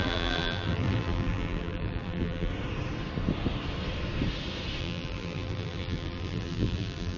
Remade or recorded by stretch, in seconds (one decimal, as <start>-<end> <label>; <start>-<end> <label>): 0.0-2.5 remade; 2.5-4.8 recorded; 4.8-7.2 remade